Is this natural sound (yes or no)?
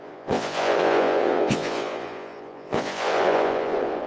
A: no